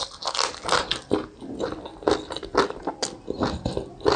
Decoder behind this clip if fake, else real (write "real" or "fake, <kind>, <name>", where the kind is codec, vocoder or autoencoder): real